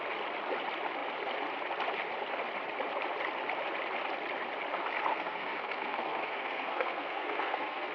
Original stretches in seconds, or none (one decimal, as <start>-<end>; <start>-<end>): 0.0-5.1